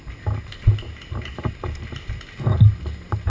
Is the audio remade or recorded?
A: recorded